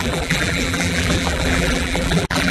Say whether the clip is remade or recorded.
remade